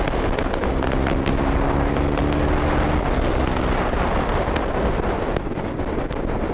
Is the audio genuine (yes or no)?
yes